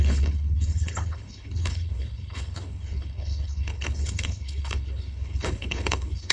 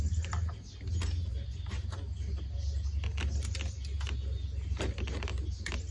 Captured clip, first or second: second